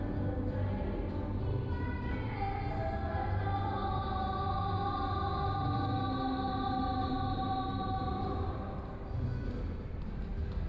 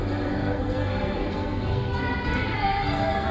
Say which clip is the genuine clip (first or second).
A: first